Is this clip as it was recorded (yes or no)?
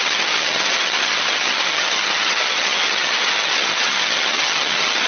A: no